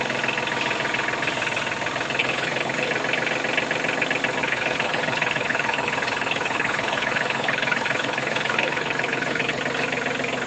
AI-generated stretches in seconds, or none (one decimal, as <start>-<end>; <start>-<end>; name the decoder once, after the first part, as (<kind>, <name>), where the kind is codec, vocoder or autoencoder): 2.2-2.9 (codec, HILCodec); 4.4-9.6